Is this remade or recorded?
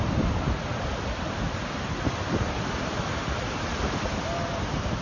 recorded